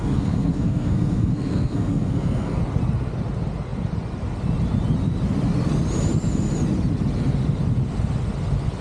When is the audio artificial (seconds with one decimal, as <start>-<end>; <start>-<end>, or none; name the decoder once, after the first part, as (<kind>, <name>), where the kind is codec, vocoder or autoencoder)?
0.0-2.6 (codec, SNAC)